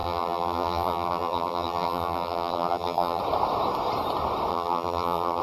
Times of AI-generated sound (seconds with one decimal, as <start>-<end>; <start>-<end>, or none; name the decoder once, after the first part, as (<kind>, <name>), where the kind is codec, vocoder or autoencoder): 0.0-3.2 (vocoder, BigVGAN v2); 4.5-5.4